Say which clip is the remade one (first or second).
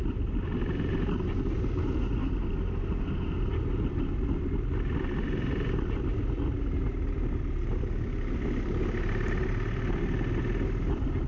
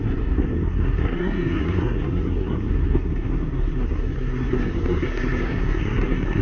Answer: second